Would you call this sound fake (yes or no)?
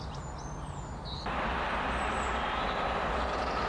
no